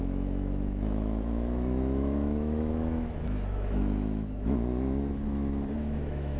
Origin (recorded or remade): remade